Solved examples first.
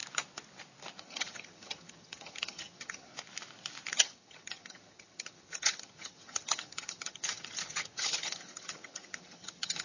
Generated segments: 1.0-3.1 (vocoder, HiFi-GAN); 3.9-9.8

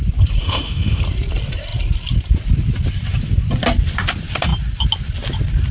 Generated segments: 0.4-1.0 (autoencoder, DAC-VAE)

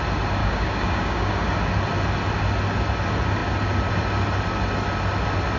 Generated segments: 0.4-1.5 (codec, DAC)

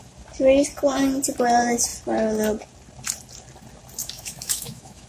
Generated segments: 4.0-5.1 (autoencoder, DAC-VAE)

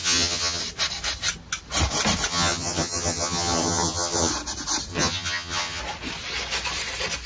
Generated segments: 0.0-0.6 (vocoder, HiFi-GAN); 2.3-4.3; 4.9-5.8

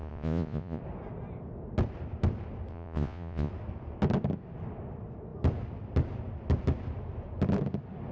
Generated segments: 0.0-0.8 (vocoder, Vocos); 2.7-3.5

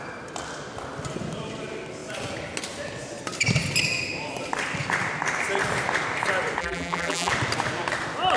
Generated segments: 6.6-7.3 (vocoder, BigVGAN v2)

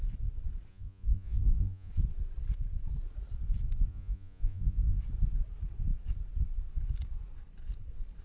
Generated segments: 0.7-1.9 (vocoder, Vocos); 3.9-5.0